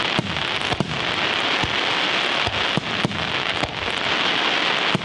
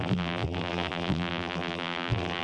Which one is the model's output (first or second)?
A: second